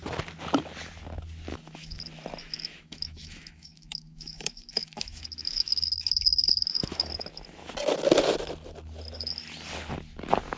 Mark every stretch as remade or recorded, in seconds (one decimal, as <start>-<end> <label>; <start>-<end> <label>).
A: 0.0-1.5 recorded; 1.5-2.0 remade; 2.0-2.4 recorded; 2.4-7.1 remade; 7.1-10.6 recorded